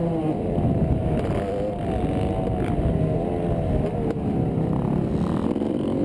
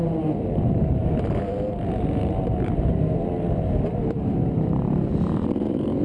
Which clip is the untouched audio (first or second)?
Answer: first